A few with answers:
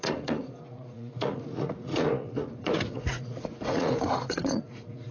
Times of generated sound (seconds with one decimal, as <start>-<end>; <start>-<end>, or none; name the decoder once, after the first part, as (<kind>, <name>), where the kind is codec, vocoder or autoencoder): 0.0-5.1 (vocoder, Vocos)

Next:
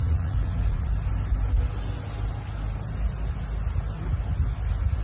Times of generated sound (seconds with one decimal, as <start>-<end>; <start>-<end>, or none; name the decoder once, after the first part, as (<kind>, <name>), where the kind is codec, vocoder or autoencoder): 0.0-0.9 (vocoder, Vocos)

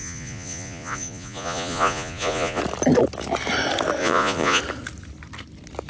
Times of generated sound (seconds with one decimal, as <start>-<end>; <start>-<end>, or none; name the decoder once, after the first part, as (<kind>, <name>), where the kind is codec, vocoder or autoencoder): 0.0-2.6 (vocoder, Vocos); 4.0-4.6

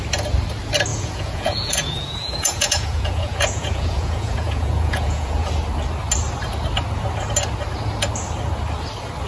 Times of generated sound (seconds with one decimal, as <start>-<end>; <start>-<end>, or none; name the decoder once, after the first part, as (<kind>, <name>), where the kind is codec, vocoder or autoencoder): 0.9-5.5 (vocoder, Vocos)